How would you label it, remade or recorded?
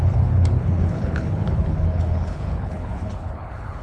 remade